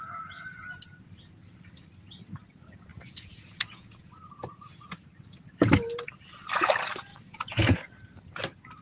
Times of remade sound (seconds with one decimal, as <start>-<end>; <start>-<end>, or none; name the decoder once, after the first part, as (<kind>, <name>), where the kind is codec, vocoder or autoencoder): 2.9-4.2 (vocoder, Vocos); 7.1-8.0